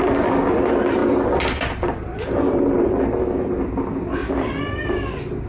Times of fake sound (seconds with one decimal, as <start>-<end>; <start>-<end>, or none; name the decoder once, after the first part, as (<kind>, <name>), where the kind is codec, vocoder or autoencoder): 4.2-4.9 (vocoder, BigVGAN v2)